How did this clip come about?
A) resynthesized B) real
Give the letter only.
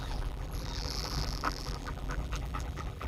A